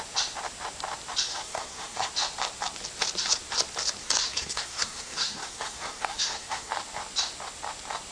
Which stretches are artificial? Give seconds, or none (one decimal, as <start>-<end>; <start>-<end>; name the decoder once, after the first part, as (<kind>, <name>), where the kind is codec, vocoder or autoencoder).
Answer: 1.3-2.1 (codec, SNAC); 4.0-6.7